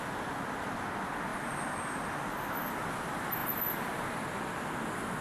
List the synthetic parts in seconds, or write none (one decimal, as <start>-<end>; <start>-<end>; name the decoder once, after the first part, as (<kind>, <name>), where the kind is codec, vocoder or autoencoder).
none